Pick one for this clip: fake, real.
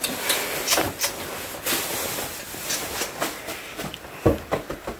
real